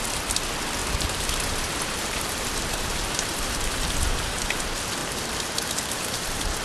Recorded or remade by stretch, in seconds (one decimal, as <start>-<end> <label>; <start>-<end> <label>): 0.0-0.8 recorded; 0.8-4.6 remade; 4.6-5.0 recorded; 5.0-6.6 remade